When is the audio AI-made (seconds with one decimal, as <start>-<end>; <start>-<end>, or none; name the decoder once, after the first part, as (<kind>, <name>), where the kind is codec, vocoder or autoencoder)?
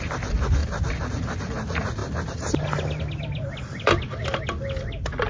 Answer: none